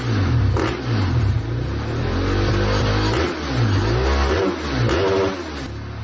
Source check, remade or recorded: recorded